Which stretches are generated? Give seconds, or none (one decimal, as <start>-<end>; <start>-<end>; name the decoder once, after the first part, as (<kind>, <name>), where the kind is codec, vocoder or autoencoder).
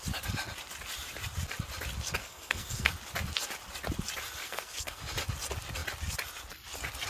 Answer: 2.2-2.9 (codec, SNAC); 4.4-5.0